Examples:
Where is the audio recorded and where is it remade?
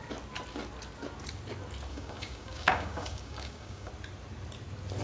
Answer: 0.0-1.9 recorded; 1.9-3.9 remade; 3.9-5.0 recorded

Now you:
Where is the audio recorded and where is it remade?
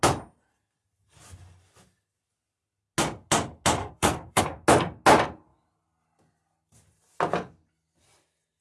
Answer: 0.0-3.8 recorded; 3.8-4.4 remade; 4.4-8.6 recorded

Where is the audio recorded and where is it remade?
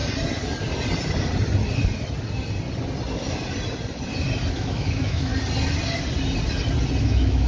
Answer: 0.0-4.5 recorded; 4.5-5.3 remade; 5.3-7.0 recorded; 7.0-7.5 remade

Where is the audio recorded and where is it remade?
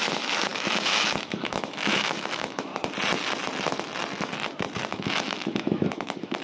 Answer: 0.0-2.7 remade; 2.7-4.9 recorded; 4.9-6.4 remade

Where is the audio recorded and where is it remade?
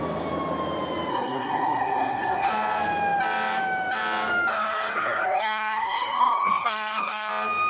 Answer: 0.0-1.1 recorded; 1.1-2.5 remade; 2.5-4.5 recorded; 4.5-7.3 remade; 7.3-7.7 recorded